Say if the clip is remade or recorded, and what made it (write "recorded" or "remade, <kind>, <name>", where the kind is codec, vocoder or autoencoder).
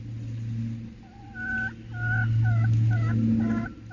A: recorded